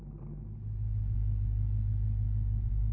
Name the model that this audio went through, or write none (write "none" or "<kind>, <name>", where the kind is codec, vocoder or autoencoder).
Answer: none